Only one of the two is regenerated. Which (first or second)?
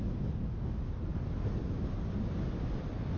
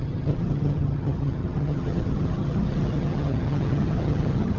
second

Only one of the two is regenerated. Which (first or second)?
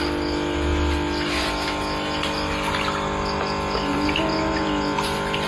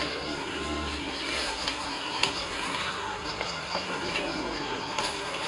second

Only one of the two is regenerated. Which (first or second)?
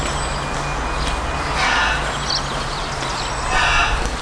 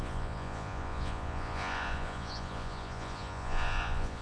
second